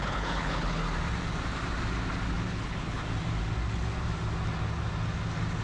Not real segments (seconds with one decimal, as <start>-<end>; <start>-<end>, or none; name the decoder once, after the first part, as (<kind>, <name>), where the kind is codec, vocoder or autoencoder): 0.0-0.8 (codec, HILCodec); 2.5-3.0